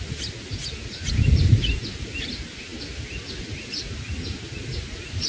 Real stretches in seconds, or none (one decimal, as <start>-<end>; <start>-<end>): 0.0-5.3